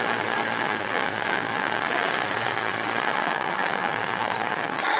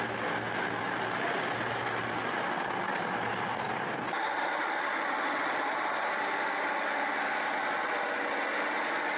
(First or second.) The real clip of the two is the second